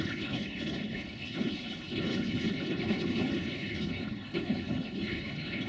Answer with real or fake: fake